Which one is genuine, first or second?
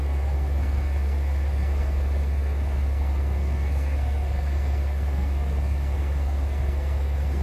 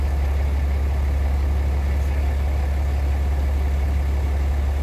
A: second